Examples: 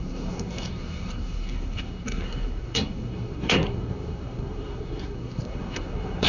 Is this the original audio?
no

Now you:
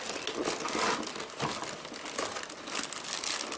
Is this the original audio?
yes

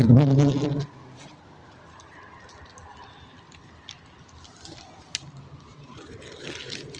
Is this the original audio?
yes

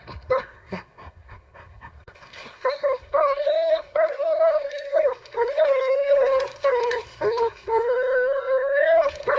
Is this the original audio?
no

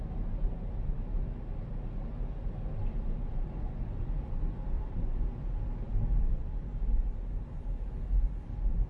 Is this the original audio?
yes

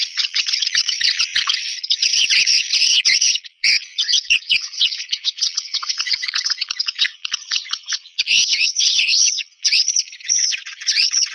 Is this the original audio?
no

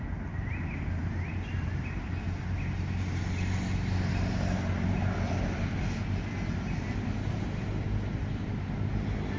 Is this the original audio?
yes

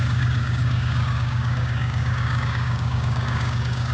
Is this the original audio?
no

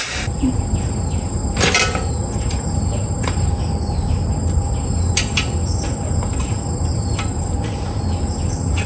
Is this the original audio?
yes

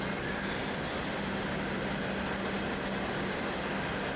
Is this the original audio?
yes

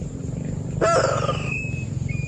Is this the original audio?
yes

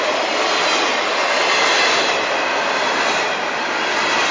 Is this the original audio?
yes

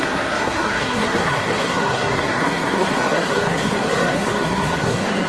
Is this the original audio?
no